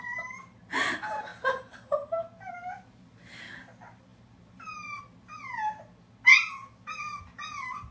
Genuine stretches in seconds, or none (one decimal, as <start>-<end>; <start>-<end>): 0.0-7.9